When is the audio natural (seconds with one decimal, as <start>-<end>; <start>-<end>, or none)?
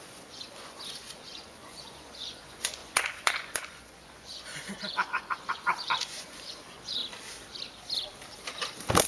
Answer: 7.0-9.1